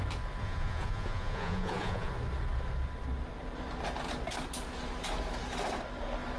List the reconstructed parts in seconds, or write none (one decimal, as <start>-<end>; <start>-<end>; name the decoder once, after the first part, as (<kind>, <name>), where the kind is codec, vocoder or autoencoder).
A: 0.4-2.1 (vocoder, Vocos)